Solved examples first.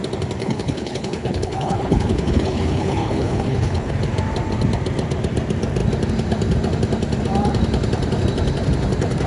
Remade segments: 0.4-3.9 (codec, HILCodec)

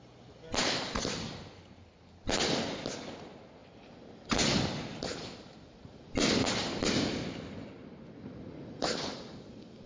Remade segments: none

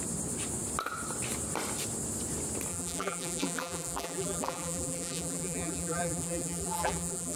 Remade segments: 2.7-7.4 (vocoder, BigVGAN v2)

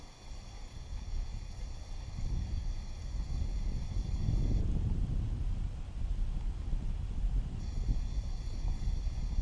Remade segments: 0.0-4.6 (codec, DAC); 7.6-9.4

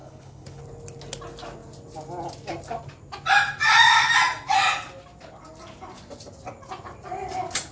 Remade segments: 0.0-0.6 (codec, HILCodec)

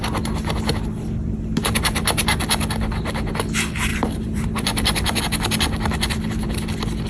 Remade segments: 3.9-5.2 (vocoder, BigVGAN v2)

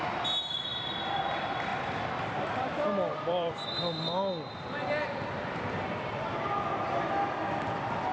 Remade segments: 1.7-6.3 (vocoder, BigVGAN v2)

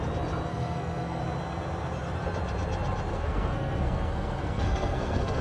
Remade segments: 0.5-1.2 (codec, SNAC); 3.1-5.4